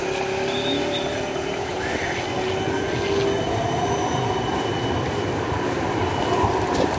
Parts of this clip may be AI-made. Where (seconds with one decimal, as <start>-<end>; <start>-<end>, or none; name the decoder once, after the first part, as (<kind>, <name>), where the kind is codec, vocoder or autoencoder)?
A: none